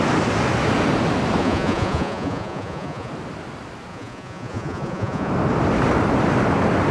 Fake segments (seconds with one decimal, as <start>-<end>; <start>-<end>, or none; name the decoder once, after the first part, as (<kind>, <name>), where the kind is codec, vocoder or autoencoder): 1.4-3.1 (vocoder, Vocos); 3.9-5.3